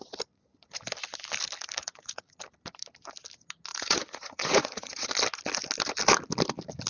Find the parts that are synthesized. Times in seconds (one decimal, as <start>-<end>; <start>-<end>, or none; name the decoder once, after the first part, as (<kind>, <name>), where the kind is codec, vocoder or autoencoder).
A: 1.8-2.4 (vocoder, Vocos); 3.7-5.1